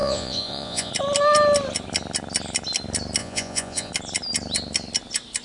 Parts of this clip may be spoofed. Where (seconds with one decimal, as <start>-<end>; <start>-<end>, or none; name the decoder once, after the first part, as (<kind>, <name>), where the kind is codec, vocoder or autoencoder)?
0.0-0.9 (vocoder, Vocos); 3.2-3.9